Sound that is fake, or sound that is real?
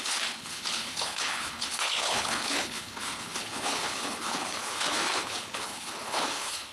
fake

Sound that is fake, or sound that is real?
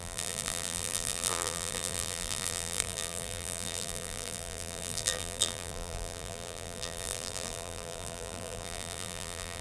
fake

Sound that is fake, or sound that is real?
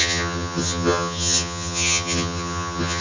fake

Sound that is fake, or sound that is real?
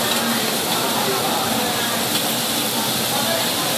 real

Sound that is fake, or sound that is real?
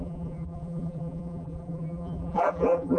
fake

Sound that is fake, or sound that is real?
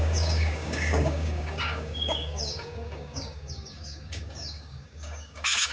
fake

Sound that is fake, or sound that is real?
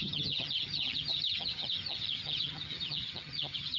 fake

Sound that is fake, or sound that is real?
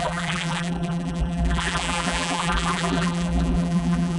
fake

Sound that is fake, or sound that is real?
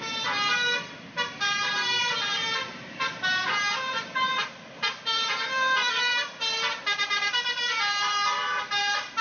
fake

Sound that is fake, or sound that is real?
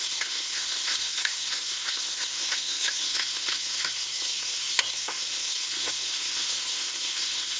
fake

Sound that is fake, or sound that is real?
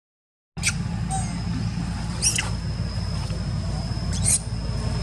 real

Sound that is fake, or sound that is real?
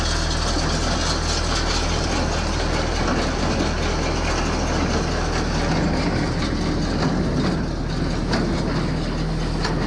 real